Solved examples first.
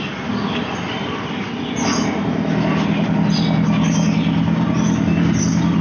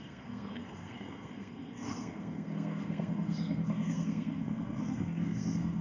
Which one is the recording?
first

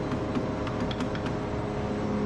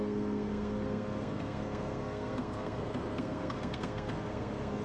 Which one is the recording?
first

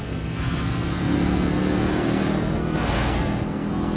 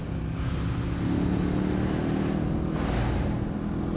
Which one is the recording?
second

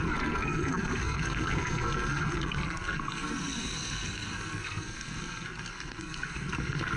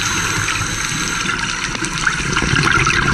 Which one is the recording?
second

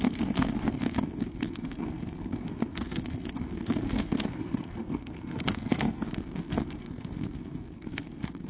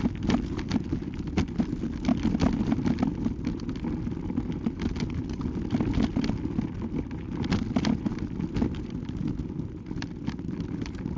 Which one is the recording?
second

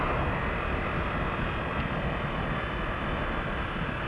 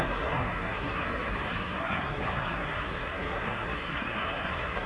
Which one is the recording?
first